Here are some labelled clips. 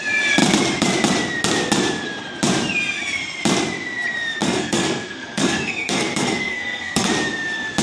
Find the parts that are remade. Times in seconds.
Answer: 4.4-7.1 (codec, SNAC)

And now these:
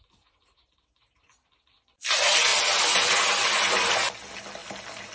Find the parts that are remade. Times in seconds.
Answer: none

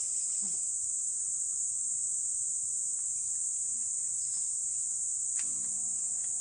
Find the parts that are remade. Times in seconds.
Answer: 3.7-4.9 (vocoder, BigVGAN v2)